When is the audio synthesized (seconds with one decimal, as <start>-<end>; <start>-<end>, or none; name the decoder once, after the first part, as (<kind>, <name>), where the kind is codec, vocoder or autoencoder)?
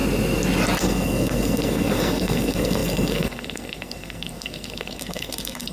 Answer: 0.8-5.7 (codec, SNAC)